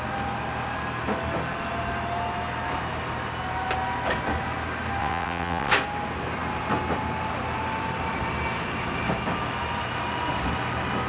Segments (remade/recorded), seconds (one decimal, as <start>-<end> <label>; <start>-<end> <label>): 0.0-5.0 recorded; 5.0-5.7 remade; 5.7-11.1 recorded